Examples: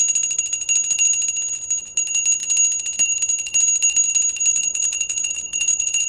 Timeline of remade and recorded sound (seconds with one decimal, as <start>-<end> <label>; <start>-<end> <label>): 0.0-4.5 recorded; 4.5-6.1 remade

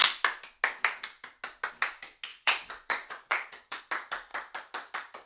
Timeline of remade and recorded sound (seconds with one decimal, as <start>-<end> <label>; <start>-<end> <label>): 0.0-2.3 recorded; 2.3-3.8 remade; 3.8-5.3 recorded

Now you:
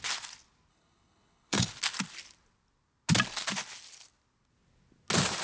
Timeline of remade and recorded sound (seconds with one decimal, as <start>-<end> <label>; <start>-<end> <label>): 0.0-0.7 recorded; 0.7-1.7 remade; 1.7-5.4 recorded

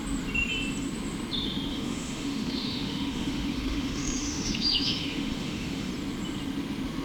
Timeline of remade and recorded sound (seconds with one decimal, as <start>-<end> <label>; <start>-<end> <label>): 0.0-1.7 recorded; 1.7-5.9 remade; 5.9-7.0 recorded

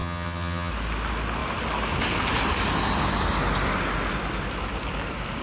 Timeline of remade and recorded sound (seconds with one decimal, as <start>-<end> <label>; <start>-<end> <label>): 0.0-0.7 remade; 0.7-5.4 recorded